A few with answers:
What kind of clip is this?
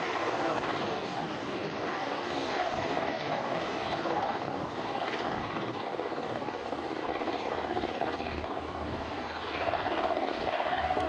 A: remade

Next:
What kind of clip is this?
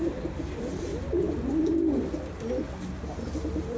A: recorded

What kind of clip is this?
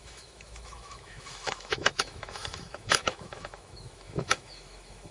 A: remade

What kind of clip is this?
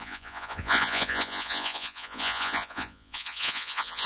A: remade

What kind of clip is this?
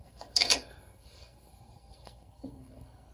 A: remade